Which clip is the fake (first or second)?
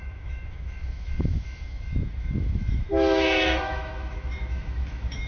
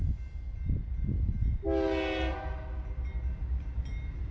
first